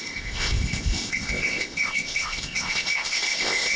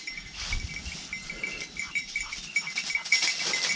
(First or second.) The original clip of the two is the second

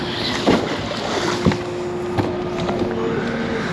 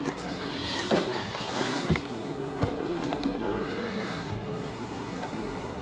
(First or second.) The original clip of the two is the first